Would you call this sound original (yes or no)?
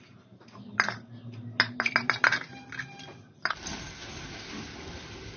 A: yes